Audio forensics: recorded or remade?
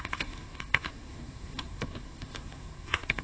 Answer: remade